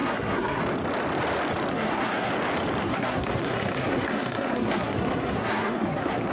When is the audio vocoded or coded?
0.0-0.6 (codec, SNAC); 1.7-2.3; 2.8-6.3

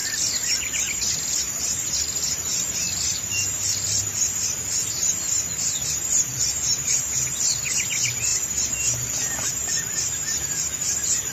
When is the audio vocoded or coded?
none

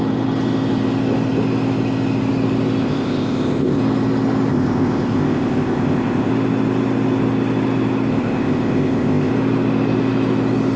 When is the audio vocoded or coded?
2.8-3.8 (codec, ZipCodec); 4.5-6.3; 8.1-9.3

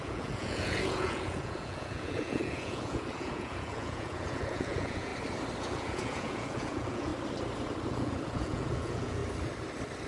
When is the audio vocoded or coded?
0.0-5.1 (vocoder, Vocos); 5.6-7.1; 7.9-9.2

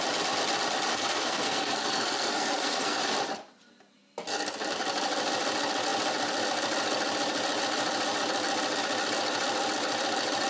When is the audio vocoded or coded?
0.9-3.0 (codec, SNAC)